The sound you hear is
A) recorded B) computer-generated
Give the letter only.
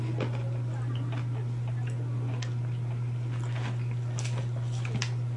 A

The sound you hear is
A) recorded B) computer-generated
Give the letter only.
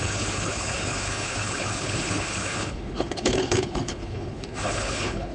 B